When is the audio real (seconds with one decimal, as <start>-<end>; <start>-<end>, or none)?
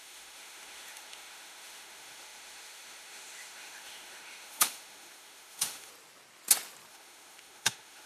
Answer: 5.9-6.9